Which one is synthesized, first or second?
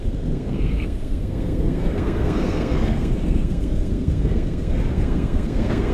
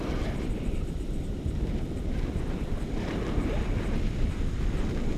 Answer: first